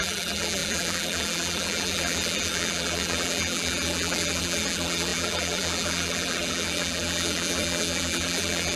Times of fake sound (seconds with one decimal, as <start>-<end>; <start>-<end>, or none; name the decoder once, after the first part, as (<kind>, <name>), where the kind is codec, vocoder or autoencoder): 0.0-8.8 (vocoder, BigVGAN v2)